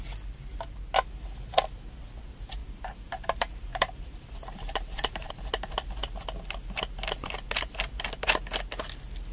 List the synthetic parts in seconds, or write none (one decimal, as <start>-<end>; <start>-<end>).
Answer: 2.6-5.3